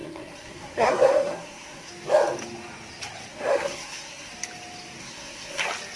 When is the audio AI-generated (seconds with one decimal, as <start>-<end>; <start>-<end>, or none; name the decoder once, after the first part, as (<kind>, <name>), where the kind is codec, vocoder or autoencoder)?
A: 0.0-1.9 (codec, SNAC); 3.3-4.3; 5.0-5.6